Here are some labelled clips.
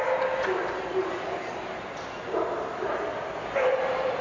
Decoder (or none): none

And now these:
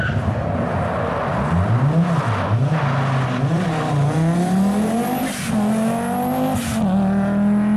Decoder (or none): none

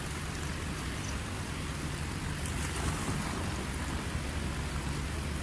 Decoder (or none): vocoder, BigVGAN v2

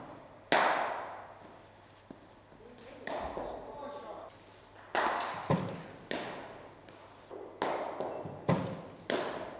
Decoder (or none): none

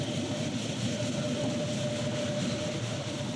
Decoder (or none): none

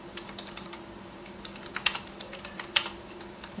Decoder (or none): vocoder, BigVGAN v2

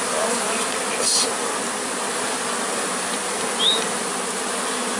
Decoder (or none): vocoder, BigVGAN v2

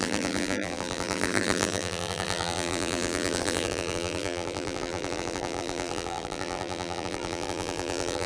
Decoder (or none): vocoder, BigVGAN v2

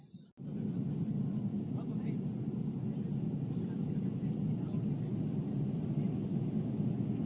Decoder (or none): none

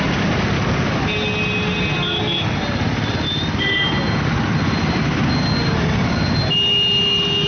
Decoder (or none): none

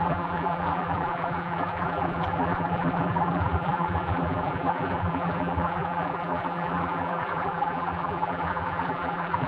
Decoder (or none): vocoder, BigVGAN v2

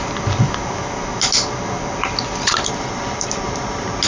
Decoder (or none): none